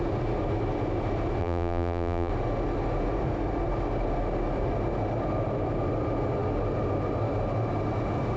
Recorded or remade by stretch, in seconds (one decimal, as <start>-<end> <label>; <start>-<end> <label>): 0.0-1.4 recorded; 1.4-2.3 remade; 2.3-8.4 recorded